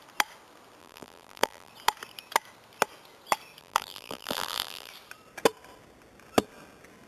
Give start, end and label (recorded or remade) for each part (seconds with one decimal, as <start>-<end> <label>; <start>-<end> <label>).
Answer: 0.0-0.8 recorded; 0.8-1.7 remade; 1.7-3.6 recorded; 3.6-4.9 remade; 4.9-7.1 recorded